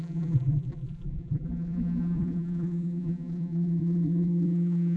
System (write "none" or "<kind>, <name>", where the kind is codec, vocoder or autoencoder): vocoder, BigVGAN v2